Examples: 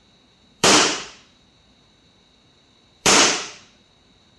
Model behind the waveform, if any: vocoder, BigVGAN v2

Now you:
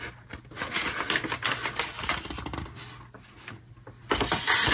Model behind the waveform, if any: none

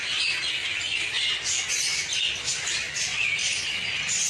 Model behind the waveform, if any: vocoder, BigVGAN v2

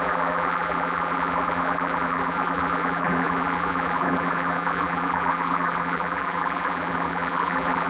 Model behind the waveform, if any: vocoder, BigVGAN v2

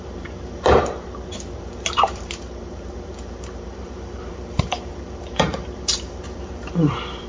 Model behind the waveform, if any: vocoder, BigVGAN v2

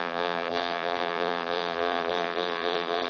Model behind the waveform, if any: vocoder, BigVGAN v2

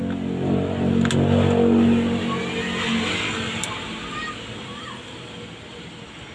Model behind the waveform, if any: none